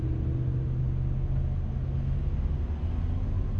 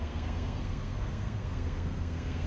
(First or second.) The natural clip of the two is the first